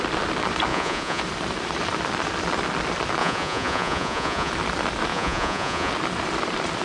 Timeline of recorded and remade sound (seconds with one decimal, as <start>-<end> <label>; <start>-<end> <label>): 0.0-0.7 recorded; 0.7-1.2 remade; 1.2-3.2 recorded; 3.2-4.5 remade; 4.5-5.1 recorded; 5.1-5.9 remade; 5.9-6.8 recorded